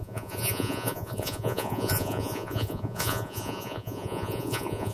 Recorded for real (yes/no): no